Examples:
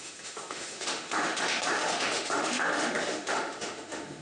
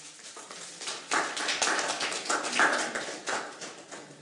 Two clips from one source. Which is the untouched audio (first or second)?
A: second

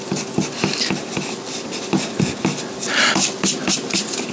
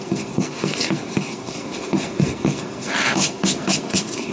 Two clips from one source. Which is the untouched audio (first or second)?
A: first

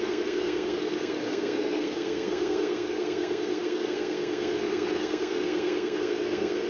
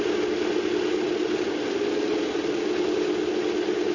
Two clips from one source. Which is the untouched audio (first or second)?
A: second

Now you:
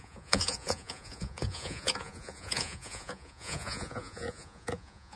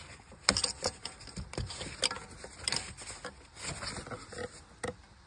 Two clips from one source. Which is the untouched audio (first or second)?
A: second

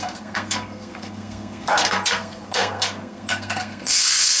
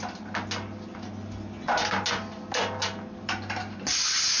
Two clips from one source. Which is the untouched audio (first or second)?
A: second